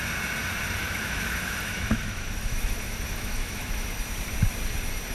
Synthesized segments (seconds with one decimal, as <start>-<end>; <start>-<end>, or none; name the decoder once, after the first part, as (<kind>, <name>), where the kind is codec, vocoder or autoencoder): 0.8-3.9 (autoencoder, DAC-VAE)